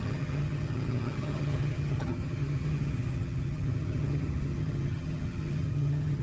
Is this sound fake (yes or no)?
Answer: yes